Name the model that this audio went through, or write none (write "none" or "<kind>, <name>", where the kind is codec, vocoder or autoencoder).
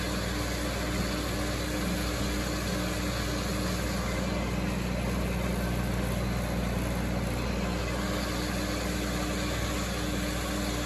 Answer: none